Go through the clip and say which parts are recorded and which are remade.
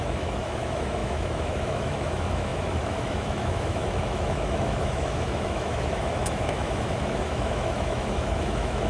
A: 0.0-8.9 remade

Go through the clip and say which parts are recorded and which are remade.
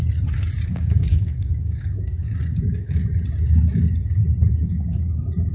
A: 0.0-0.7 recorded; 0.7-3.0 remade; 3.0-4.7 recorded; 4.7-5.5 remade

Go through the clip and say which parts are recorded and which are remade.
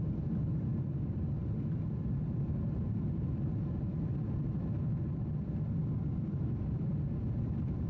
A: 0.0-7.9 recorded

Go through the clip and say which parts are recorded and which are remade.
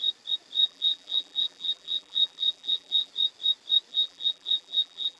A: 0.0-0.6 recorded; 0.6-3.1 remade; 3.1-3.9 recorded; 3.9-5.2 remade